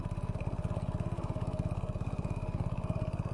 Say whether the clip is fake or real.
fake